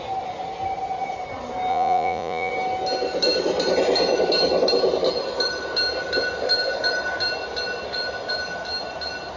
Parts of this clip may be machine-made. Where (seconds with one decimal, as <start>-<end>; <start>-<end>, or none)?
1.7-2.5